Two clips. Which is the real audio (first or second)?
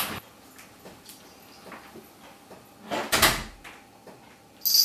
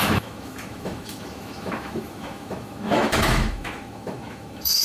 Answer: first